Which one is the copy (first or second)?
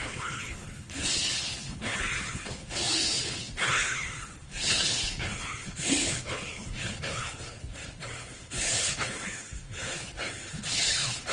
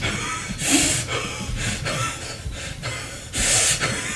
first